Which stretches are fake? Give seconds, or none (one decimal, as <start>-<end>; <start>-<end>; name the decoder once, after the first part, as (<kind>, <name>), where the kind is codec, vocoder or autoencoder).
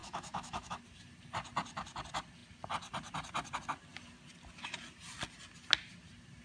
0.0-0.8 (autoencoder, DAC-VAE)